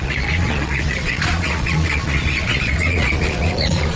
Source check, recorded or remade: remade